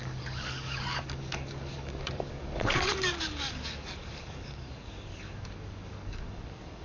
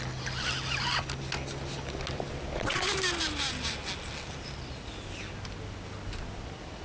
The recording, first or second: second